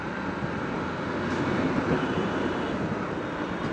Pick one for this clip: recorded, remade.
recorded